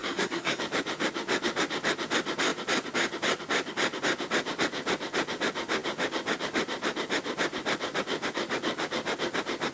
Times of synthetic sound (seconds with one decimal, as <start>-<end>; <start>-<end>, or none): 0.0-0.6